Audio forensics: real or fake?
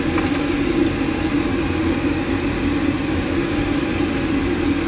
real